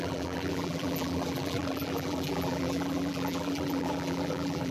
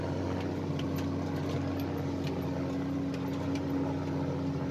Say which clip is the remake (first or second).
first